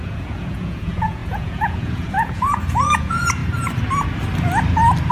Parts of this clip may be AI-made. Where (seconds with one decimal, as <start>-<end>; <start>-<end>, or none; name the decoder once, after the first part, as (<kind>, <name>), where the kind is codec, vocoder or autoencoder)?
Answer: 0.0-3.4 (vocoder, Vocos)